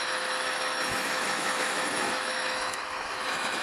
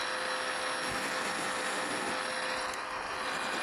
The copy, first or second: first